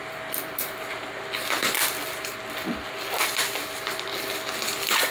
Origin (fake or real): real